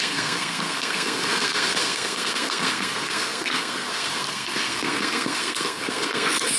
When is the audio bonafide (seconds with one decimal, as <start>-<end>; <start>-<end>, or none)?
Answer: none